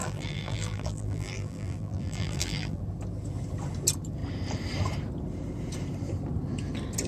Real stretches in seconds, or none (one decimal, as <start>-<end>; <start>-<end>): 2.8-7.1